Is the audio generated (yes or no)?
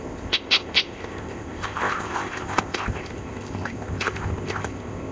yes